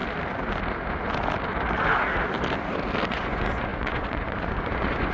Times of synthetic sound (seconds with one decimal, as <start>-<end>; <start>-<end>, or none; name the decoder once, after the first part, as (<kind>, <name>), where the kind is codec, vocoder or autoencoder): 3.1-5.1 (vocoder, Vocos)